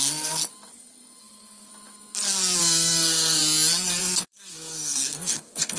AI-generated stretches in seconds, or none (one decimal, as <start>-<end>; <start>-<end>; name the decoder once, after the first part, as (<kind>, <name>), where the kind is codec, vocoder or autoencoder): 0.0-0.4 (codec, SNAC); 1.2-1.7; 2.6-3.4; 4.0-5.8